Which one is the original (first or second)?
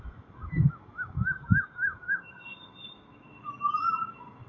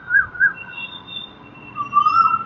second